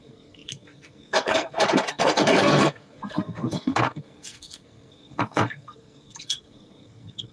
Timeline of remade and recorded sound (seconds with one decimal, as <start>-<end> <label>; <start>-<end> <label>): 0.0-7.3 remade